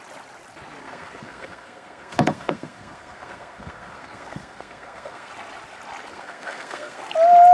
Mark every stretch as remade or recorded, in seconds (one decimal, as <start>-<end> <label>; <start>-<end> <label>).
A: 0.0-0.8 recorded; 0.8-5.3 remade; 5.3-6.1 recorded; 6.1-7.0 remade; 7.0-7.5 recorded